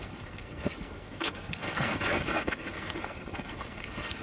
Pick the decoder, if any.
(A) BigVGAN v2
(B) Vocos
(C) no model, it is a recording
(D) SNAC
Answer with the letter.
D